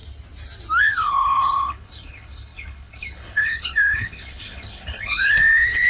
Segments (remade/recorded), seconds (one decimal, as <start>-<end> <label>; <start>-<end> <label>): 0.0-0.8 recorded; 0.8-5.9 remade